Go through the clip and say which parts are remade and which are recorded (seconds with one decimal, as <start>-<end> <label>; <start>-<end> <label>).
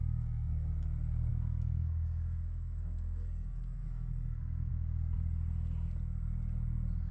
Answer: 0.0-0.7 remade; 0.7-1.3 recorded; 1.3-4.7 remade; 4.7-7.1 recorded